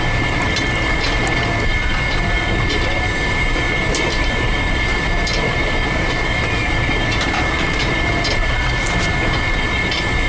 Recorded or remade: remade